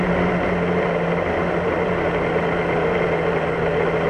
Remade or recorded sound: recorded